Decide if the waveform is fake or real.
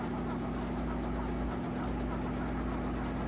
real